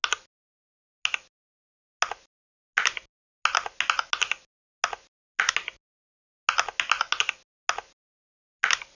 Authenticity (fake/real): real